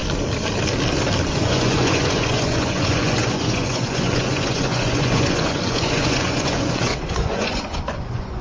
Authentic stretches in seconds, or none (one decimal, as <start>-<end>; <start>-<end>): 0.0-1.3

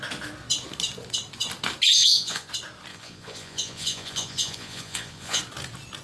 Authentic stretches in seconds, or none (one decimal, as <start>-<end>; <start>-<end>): 0.0-2.0; 2.5-2.9; 5.4-6.0

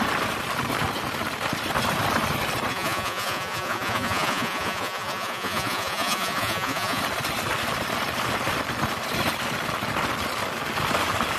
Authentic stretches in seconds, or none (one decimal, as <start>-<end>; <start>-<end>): 0.0-2.7; 7.0-11.4